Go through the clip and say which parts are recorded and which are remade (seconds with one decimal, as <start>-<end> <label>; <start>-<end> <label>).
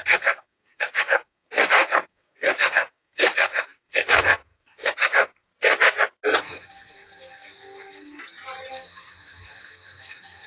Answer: 0.0-5.5 remade; 5.5-6.4 recorded; 6.4-8.2 remade; 8.2-8.7 recorded; 8.7-10.5 remade